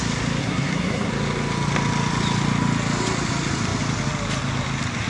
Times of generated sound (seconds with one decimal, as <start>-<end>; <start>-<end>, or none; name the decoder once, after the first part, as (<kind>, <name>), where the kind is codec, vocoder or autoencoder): 0.4-1.1 (codec, SNAC)